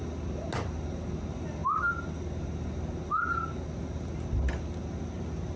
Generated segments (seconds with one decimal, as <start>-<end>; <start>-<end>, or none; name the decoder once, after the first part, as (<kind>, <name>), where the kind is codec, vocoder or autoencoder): none